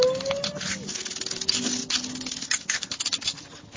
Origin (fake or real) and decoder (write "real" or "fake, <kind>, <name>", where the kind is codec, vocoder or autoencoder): real